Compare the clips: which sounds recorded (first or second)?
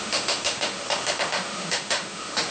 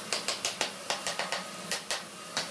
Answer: second